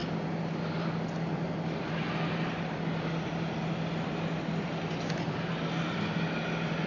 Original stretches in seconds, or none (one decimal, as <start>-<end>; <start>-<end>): 0.0-6.9